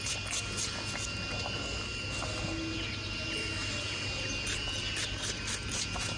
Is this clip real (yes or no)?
yes